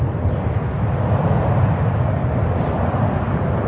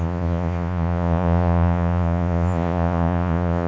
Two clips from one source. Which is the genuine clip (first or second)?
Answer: first